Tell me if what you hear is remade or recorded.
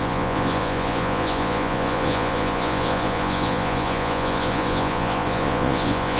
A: remade